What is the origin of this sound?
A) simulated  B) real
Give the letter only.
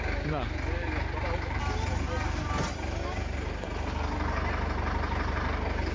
B